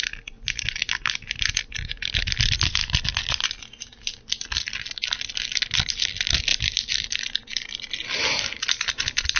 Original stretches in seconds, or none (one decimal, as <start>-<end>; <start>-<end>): 0.0-6.5; 7.4-8.5